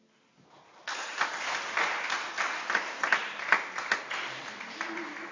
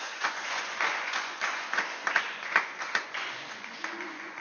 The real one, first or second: first